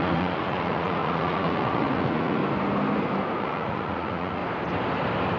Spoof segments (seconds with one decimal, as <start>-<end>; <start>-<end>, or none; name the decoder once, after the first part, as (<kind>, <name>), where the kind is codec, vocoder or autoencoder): 0.0-2.4 (vocoder, Vocos); 3.4-4.4